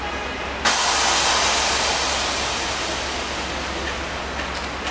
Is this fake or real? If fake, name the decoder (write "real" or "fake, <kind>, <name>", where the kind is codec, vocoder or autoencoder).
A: real